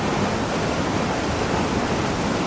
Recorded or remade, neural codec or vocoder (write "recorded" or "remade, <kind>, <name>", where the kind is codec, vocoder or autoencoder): recorded